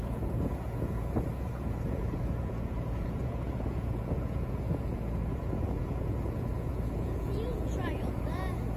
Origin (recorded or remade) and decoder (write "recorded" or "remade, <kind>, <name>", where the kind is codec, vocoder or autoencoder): remade, vocoder, Vocos